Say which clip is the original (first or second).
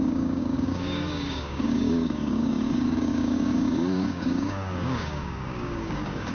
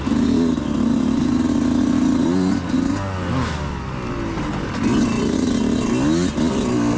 second